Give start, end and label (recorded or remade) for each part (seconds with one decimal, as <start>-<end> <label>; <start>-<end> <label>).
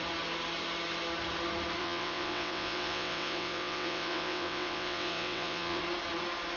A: 0.0-1.8 recorded; 1.8-5.8 remade; 5.8-6.6 recorded